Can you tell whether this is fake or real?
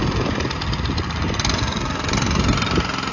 real